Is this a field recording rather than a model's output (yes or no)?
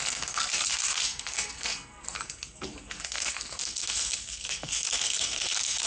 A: no